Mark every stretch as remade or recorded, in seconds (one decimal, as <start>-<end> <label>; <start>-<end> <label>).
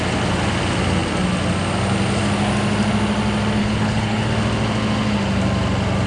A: 0.0-3.6 recorded; 3.6-4.3 remade; 4.3-6.1 recorded